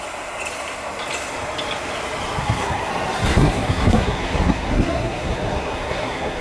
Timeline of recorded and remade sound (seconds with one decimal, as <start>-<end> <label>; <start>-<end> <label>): 0.0-2.4 recorded; 2.4-2.9 remade; 2.9-3.3 recorded; 3.3-6.4 remade